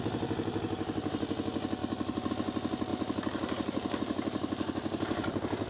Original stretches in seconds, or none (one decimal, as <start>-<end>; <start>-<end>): 0.0-1.8; 2.3-2.9